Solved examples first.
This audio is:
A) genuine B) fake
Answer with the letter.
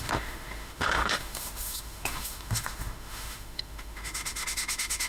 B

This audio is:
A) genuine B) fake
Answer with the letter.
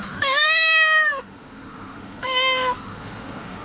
B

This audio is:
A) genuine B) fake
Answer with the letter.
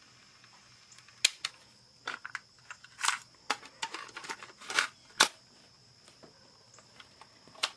A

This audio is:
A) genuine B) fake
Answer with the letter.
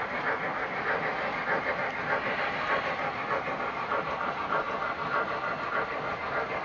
A